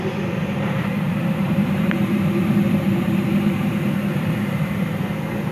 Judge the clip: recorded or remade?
remade